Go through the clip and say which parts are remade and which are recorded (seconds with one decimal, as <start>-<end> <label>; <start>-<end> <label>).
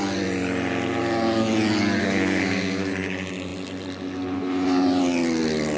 0.0-2.0 recorded; 2.0-2.9 remade; 2.9-5.8 recorded